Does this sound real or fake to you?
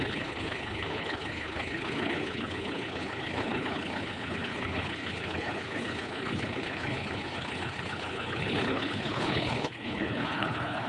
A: fake